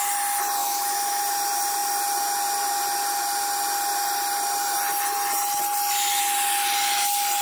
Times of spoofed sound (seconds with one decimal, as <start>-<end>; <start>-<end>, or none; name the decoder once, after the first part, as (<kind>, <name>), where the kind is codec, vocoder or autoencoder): 0.6-1.2 (autoencoder, DAC-VAE)